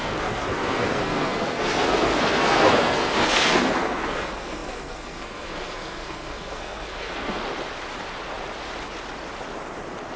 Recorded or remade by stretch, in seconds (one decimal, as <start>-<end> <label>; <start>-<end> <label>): 0.0-7.4 remade; 7.4-10.2 recorded